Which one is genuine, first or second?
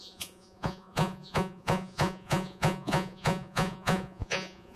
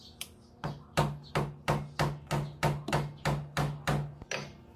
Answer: second